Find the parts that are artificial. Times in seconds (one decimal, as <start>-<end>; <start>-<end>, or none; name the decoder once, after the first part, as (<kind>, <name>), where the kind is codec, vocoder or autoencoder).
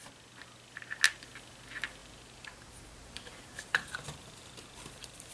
2.0-5.3 (vocoder, BigVGAN v2)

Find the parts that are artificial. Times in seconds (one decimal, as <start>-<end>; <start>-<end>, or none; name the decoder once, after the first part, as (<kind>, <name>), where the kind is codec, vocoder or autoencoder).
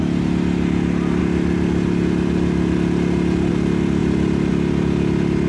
none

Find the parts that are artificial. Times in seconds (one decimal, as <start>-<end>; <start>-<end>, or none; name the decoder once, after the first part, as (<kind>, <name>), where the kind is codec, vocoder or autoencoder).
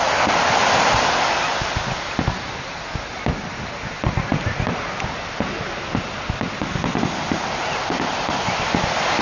none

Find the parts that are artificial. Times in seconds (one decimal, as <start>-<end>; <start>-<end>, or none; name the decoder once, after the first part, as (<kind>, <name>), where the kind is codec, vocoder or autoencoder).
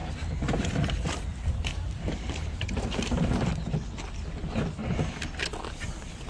0.0-0.9 (vocoder, BigVGAN v2); 1.3-3.0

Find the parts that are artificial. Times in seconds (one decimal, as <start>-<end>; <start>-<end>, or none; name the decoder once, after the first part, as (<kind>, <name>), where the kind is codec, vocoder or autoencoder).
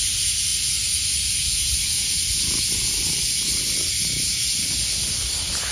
none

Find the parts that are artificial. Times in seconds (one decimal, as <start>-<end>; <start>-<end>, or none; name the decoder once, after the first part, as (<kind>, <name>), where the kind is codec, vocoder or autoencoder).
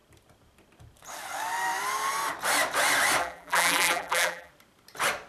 3.2-4.5 (vocoder, BigVGAN v2)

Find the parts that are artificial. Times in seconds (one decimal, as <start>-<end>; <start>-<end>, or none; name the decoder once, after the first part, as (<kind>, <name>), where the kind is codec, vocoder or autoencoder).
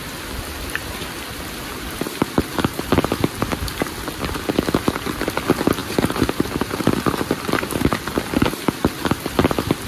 5.8-7.0 (vocoder, BigVGAN v2)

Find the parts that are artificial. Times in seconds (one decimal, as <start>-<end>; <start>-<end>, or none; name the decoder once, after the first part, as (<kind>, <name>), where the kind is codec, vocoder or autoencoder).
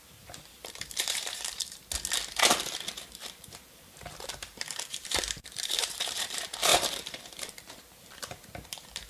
0.0-1.8 (vocoder, BigVGAN v2); 2.9-9.1